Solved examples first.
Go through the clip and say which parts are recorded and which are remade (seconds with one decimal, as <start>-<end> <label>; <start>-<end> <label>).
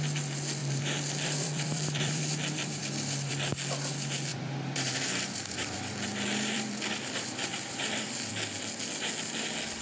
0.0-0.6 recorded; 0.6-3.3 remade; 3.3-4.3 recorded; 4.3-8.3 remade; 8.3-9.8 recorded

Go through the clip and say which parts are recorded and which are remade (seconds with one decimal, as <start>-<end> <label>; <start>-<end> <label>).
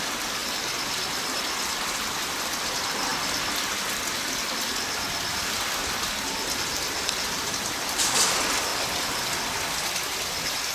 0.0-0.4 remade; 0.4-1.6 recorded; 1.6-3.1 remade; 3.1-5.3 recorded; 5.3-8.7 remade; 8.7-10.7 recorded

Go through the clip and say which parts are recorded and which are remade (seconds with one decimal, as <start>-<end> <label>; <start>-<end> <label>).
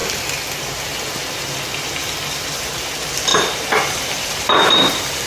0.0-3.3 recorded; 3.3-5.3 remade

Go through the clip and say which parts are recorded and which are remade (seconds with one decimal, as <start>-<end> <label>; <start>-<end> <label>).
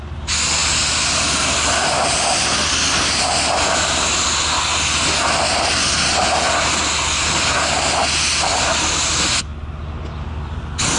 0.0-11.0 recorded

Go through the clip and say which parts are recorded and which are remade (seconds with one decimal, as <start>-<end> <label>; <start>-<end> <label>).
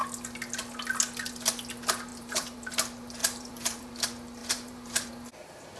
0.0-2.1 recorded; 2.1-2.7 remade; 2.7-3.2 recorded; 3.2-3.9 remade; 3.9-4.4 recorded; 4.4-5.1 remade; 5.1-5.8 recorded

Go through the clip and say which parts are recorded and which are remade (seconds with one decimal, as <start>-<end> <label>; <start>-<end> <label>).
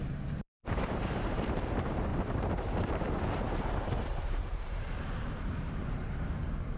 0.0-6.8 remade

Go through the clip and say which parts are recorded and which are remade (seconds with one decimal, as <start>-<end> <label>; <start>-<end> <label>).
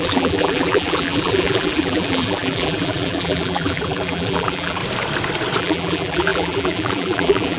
0.0-4.8 remade; 4.8-5.6 recorded; 5.6-7.6 remade